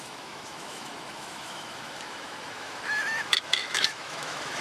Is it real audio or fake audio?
fake